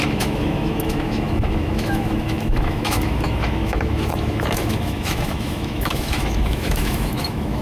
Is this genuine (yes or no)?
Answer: no